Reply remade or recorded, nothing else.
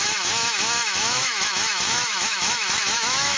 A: remade